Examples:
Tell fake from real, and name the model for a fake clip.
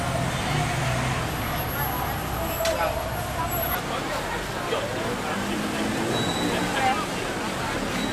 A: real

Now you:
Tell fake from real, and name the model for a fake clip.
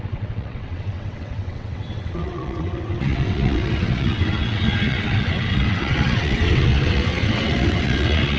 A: fake, vocoder, WaveNeXt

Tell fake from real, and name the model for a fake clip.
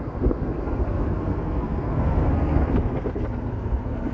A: fake, codec, SNAC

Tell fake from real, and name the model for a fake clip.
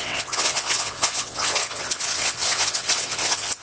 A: fake, vocoder, WaveNeXt